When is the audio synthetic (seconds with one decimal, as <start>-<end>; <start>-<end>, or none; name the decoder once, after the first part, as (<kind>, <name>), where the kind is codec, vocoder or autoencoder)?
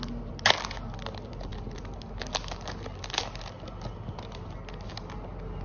none